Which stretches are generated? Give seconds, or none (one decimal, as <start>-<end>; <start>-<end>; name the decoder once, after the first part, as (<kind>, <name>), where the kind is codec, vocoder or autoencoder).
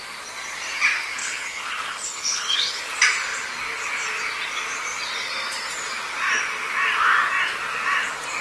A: 1.2-2.9 (codec, HILCodec)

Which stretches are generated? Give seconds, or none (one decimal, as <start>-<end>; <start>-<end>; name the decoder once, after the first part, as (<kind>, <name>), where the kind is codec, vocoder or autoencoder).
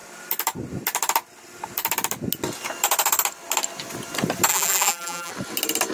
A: 4.5-5.3 (vocoder, BigVGAN v2)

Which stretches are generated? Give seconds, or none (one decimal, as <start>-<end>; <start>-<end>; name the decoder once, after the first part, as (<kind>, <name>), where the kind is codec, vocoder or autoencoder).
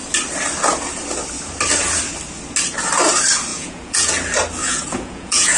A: 3.5-4.1 (vocoder, Vocos); 4.6-5.6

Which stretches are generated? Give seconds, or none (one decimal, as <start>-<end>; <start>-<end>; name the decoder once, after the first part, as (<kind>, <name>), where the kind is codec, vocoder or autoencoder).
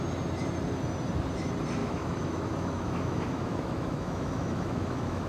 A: 1.8-5.3 (autoencoder, DAC-VAE)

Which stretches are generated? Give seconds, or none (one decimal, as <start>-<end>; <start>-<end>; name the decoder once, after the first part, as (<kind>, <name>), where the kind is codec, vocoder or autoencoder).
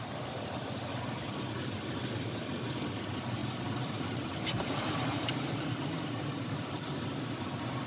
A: 3.4-7.5 (vocoder, BigVGAN v2)